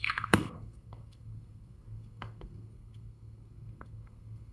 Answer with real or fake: fake